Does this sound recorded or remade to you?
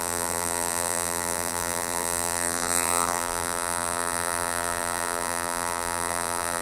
remade